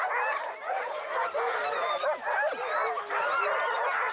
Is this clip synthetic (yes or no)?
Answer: no